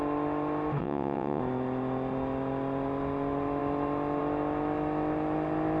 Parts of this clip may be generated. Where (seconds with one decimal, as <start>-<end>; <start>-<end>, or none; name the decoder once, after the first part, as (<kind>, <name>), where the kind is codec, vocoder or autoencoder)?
0.8-1.4 (vocoder, WaveNeXt)